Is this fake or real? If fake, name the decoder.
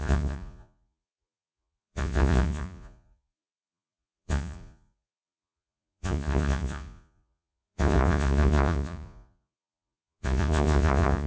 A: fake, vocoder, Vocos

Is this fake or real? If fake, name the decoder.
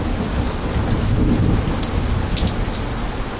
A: real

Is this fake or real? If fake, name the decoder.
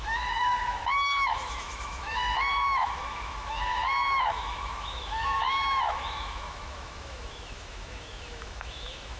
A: fake, autoencoder, DAC-VAE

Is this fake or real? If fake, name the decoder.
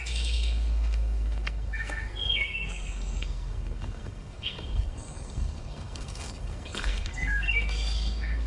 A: fake, codec, SNAC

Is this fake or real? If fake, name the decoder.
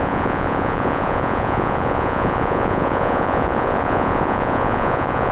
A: fake, vocoder, Vocos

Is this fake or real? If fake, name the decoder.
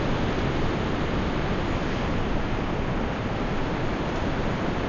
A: real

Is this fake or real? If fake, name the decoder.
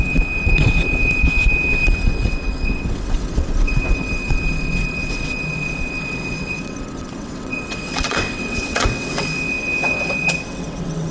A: fake, vocoder, WaveNeXt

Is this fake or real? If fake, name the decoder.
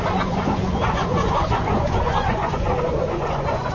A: fake, vocoder, Vocos